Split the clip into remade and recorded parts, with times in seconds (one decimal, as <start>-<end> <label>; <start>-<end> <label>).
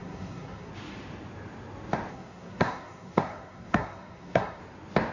0.0-0.7 remade; 0.7-2.1 recorded; 2.1-4.6 remade; 4.6-5.1 recorded